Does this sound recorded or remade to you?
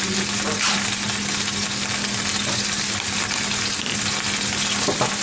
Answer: recorded